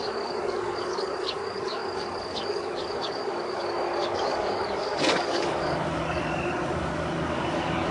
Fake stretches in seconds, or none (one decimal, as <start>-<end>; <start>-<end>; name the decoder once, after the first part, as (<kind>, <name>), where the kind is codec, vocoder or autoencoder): 0.0-7.9 (codec, DAC)